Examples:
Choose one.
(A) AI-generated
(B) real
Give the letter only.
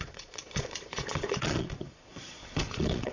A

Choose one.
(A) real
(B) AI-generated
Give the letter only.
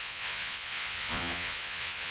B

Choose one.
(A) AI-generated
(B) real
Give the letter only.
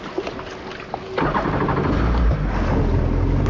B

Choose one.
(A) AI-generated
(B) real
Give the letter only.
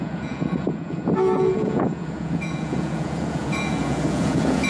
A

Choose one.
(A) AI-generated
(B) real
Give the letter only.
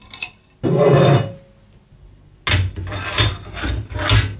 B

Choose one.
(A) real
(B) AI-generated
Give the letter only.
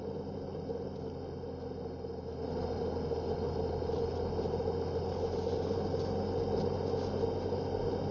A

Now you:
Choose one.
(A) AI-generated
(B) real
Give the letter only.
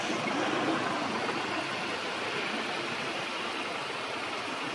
B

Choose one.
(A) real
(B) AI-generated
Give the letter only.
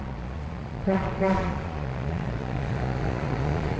B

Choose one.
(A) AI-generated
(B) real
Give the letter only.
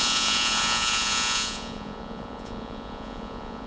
A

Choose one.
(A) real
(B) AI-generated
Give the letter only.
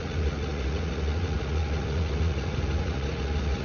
B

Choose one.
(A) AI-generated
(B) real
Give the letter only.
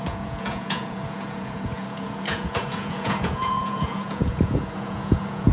A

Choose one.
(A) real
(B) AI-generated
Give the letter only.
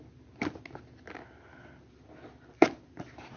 A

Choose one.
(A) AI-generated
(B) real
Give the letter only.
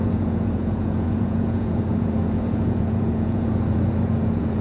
A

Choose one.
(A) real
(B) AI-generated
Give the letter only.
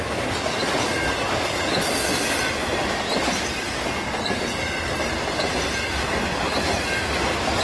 A